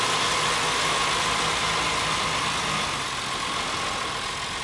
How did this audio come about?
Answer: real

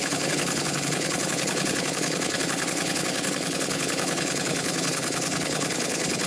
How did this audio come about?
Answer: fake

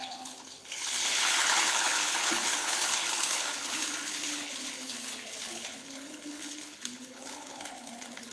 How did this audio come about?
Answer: fake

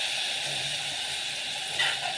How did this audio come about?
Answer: real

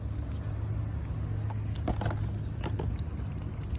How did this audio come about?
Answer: real